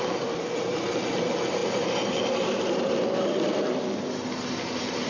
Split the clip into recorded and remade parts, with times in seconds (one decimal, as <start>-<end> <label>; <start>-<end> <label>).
0.0-5.1 recorded